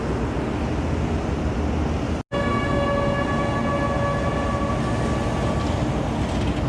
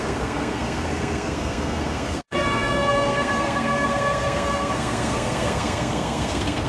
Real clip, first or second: first